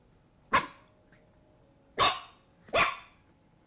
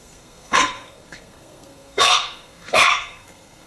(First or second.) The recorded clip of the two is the first